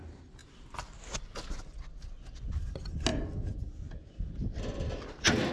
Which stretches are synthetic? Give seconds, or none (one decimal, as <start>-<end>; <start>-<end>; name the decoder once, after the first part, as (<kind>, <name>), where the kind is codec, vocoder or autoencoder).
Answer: none